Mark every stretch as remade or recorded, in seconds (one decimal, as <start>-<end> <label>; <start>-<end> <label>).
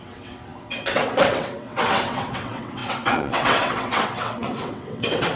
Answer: 0.0-5.4 remade